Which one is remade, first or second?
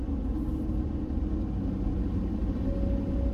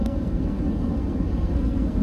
second